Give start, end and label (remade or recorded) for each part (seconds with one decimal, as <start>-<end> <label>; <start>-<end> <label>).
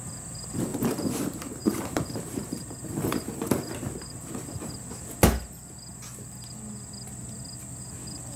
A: 0.0-0.7 recorded; 0.7-4.7 remade; 4.7-8.4 recorded